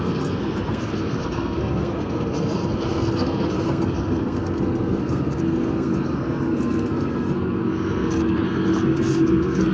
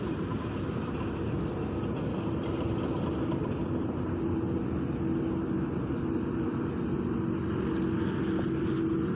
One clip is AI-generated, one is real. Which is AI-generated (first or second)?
first